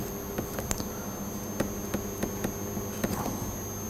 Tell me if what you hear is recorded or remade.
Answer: recorded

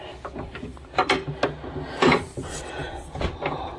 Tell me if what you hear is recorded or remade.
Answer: recorded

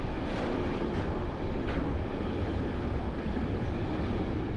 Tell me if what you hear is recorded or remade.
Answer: recorded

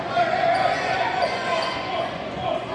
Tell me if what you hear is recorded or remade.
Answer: remade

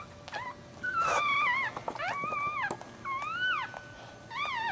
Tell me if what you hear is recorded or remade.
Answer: recorded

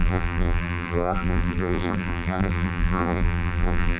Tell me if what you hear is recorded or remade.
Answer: remade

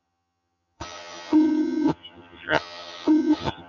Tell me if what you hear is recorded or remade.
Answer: remade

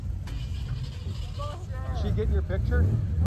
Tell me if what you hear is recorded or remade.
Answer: recorded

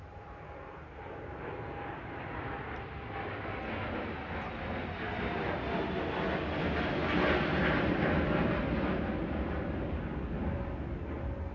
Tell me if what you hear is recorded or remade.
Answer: recorded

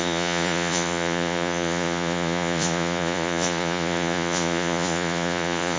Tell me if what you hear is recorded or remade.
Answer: remade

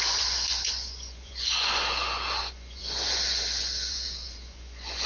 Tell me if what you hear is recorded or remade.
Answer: remade